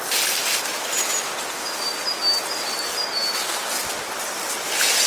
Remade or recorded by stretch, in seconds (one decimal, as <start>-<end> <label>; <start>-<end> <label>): 0.0-5.1 recorded